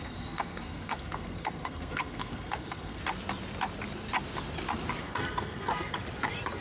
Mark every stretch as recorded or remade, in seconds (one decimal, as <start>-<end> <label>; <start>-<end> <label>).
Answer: 0.0-3.0 remade; 3.0-5.0 recorded; 5.0-5.7 remade; 5.7-6.6 recorded